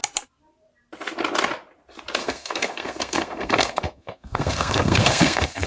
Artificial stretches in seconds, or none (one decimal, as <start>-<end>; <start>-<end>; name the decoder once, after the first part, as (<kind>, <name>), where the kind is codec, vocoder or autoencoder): 2.2-5.7 (codec, SNAC)